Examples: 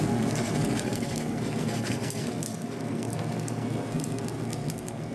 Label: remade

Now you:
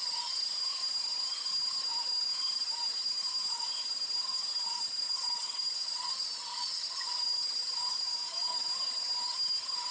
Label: remade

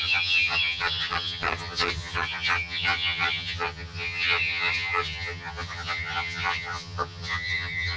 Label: remade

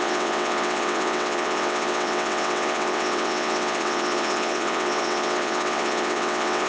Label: remade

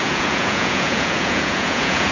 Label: remade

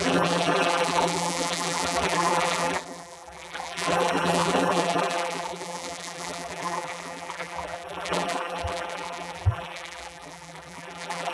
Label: remade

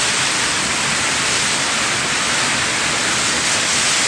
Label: recorded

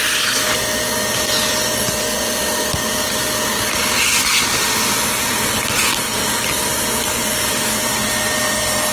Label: recorded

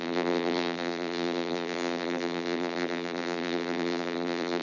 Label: remade